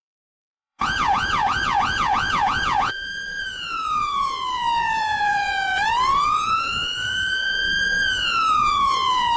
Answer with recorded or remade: remade